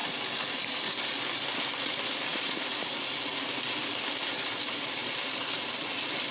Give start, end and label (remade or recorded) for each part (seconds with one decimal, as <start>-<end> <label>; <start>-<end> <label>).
0.0-0.7 remade; 0.7-2.3 recorded; 2.3-3.8 remade; 3.8-5.0 recorded; 5.0-6.3 remade